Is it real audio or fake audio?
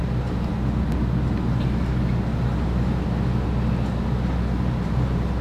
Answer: real